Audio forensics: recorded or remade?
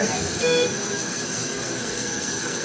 remade